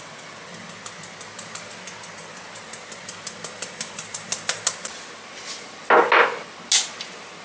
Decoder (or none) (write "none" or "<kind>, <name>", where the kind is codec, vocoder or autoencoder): none